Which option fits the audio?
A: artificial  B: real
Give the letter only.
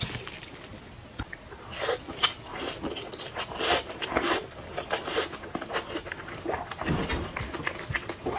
B